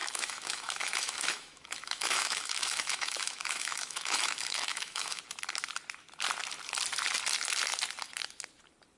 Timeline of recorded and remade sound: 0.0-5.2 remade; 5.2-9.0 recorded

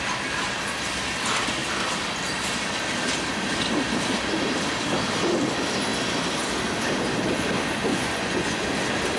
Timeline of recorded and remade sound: 0.0-7.9 recorded; 7.9-8.6 remade; 8.6-9.2 recorded

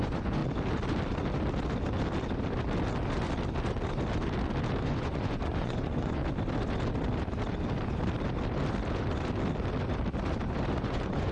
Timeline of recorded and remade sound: 0.0-0.4 remade; 0.4-4.8 recorded; 4.8-6.2 remade; 6.2-10.7 recorded; 10.7-11.3 remade